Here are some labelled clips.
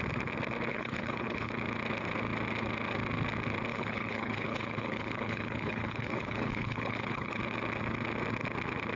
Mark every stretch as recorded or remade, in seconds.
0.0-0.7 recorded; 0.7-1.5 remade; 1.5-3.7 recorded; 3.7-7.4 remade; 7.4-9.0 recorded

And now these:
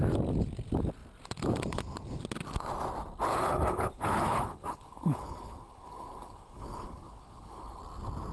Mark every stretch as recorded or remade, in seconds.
0.0-3.3 recorded; 3.3-7.8 remade; 7.8-8.3 recorded

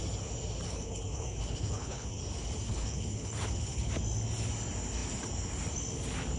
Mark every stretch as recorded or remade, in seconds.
0.0-0.7 recorded; 0.7-2.2 remade; 2.2-2.7 recorded; 2.7-3.9 remade; 3.9-6.4 recorded

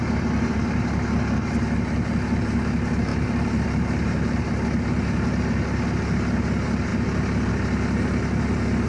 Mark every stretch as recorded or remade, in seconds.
0.0-8.9 recorded

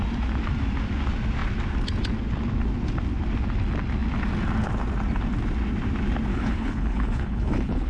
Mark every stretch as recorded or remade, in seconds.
0.0-6.3 recorded; 6.3-7.9 remade

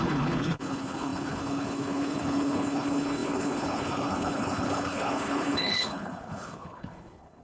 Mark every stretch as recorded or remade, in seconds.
0.0-7.4 remade

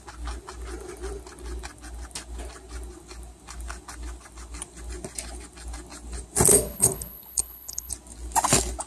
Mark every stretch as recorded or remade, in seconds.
0.0-6.5 recorded; 6.5-7.9 remade; 7.9-8.9 recorded

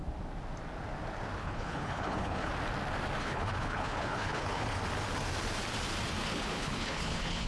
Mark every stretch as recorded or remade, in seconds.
0.0-1.4 recorded; 1.4-2.5 remade; 2.5-3.2 recorded; 3.2-4.8 remade; 4.8-6.2 recorded; 6.2-7.5 remade